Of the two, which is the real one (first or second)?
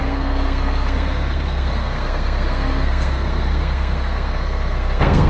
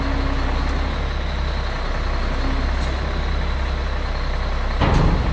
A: second